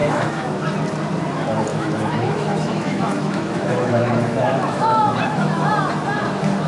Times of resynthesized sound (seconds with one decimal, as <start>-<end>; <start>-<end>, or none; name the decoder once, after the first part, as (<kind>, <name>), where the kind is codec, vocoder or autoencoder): 0.0-0.6 (autoencoder, DAC-VAE); 1.7-5.7

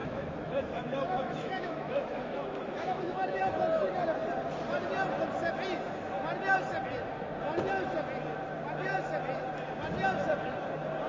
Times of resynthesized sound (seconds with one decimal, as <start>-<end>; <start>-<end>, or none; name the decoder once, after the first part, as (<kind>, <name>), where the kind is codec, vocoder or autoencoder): 0.0-3.5 (autoencoder, DAC-VAE)